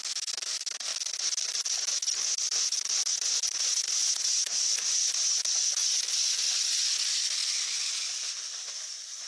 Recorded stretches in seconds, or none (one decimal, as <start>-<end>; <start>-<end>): 0.0-9.3